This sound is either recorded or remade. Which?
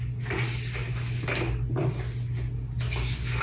recorded